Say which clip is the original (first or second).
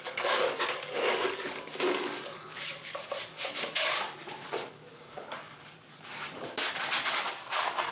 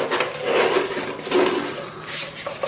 second